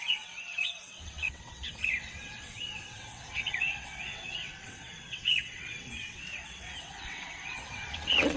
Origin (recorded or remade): remade